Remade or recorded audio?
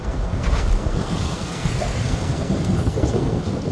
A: remade